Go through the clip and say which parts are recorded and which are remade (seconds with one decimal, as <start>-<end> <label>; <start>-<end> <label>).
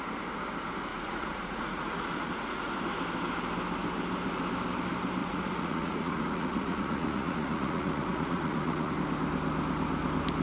0.0-0.9 recorded; 0.9-2.7 remade; 2.7-5.2 recorded; 5.2-8.9 remade; 8.9-10.4 recorded